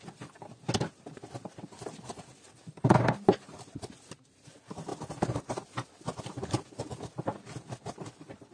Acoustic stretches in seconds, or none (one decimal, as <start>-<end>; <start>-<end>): 0.0-8.5